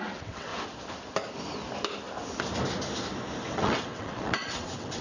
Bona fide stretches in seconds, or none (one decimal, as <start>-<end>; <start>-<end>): 0.5-3.5